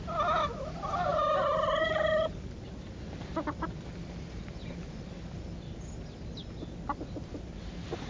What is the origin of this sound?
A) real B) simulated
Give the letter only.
A